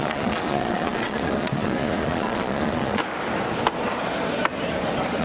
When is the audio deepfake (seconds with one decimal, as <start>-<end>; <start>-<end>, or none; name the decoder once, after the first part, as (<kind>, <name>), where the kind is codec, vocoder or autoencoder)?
0.0-3.0 (vocoder, Vocos)